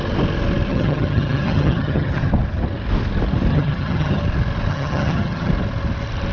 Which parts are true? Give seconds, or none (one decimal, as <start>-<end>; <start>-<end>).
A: 0.0-0.7; 2.3-3.5; 4.2-4.7; 5.5-6.3